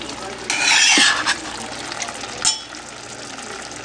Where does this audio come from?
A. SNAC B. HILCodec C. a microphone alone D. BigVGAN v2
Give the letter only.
C